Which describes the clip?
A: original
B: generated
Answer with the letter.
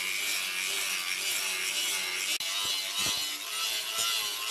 A